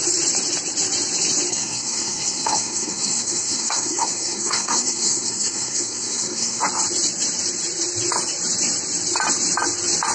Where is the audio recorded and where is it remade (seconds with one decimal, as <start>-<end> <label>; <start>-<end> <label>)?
0.0-1.5 recorded; 1.5-6.6 remade; 6.6-10.1 recorded